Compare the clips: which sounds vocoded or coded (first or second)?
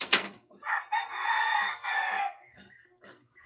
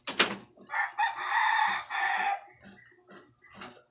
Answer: first